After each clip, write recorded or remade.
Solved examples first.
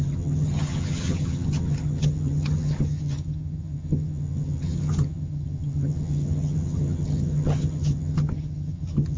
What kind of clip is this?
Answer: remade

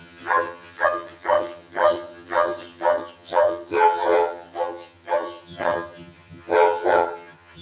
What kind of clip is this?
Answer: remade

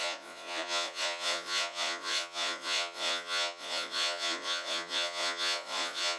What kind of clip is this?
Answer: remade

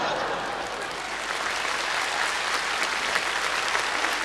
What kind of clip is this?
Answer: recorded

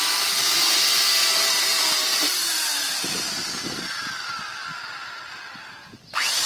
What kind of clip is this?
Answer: recorded